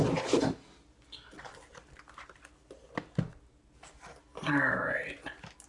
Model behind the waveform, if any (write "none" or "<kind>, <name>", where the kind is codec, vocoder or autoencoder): none